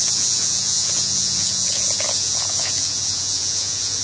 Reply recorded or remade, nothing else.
remade